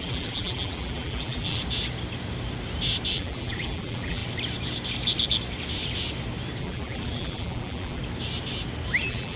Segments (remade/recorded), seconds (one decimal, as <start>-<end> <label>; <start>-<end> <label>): 0.0-1.6 remade; 1.6-3.1 recorded; 3.1-4.2 remade; 4.2-6.6 recorded; 6.6-8.0 remade; 8.0-9.0 recorded; 9.0-9.4 remade